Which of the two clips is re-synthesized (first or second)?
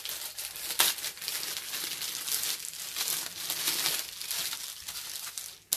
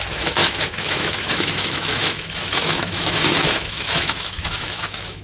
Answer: second